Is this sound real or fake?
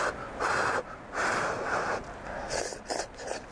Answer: real